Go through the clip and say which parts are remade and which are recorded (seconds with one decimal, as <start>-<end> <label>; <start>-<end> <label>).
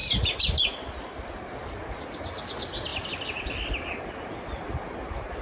0.0-5.4 recorded